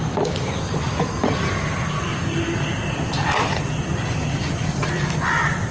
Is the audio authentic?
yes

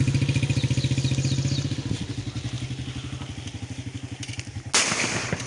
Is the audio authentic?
yes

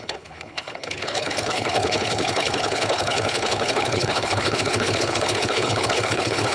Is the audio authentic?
no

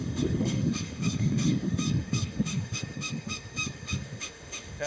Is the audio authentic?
no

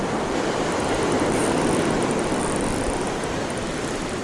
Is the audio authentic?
no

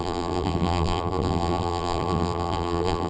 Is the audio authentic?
no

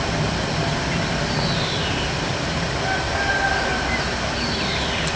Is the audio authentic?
yes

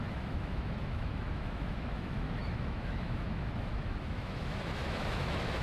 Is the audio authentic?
no